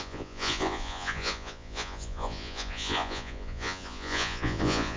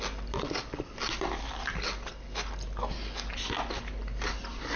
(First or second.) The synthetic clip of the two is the first